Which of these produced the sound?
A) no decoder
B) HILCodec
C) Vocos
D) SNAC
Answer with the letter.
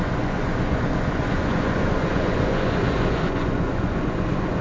C